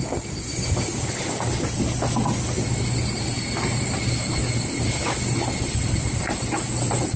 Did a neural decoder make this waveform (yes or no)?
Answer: no